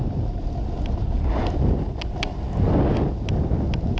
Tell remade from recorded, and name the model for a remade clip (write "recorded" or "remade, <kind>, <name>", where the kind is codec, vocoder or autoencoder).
recorded